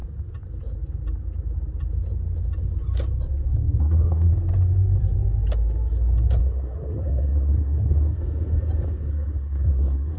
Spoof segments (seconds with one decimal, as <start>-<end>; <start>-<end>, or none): 3.8-4.3; 6.4-8.2; 9.1-10.2